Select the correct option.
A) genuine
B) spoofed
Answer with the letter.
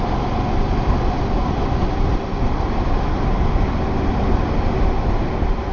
A